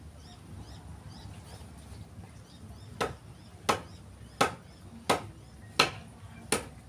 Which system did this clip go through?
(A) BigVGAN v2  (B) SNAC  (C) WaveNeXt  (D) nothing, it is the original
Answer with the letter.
D